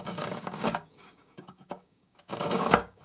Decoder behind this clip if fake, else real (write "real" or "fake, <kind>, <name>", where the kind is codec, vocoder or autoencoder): fake, codec, DAC